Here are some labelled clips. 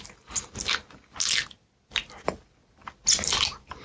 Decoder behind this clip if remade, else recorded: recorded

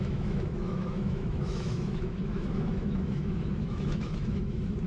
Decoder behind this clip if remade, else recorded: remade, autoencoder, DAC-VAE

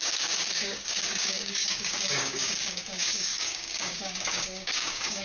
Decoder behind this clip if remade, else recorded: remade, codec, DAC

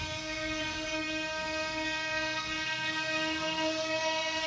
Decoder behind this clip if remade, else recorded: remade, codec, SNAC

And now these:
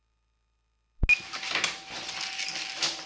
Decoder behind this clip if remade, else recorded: recorded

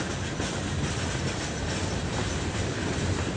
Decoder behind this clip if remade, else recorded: recorded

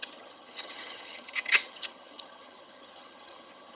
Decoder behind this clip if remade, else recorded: remade, vocoder, HiFi-GAN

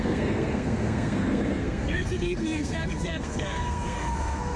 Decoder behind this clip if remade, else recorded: remade, codec, SNAC